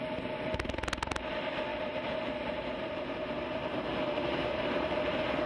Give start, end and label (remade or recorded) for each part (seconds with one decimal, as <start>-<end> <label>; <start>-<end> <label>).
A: 0.0-1.7 recorded; 1.7-5.0 remade; 5.0-5.5 recorded